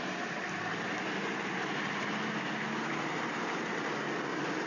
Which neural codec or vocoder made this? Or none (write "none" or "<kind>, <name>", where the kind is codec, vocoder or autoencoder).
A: none